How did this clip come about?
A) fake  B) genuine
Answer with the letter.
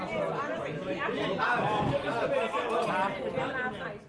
B